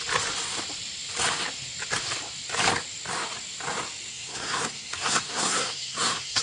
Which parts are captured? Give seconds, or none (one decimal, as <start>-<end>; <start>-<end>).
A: 0.0-4.1